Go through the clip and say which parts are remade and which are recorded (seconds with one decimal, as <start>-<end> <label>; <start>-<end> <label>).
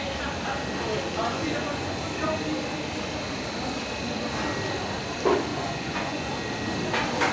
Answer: 0.0-1.2 recorded; 1.2-2.0 remade; 2.0-5.5 recorded; 5.5-6.3 remade; 6.3-7.3 recorded